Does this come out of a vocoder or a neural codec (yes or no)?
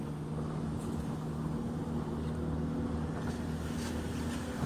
no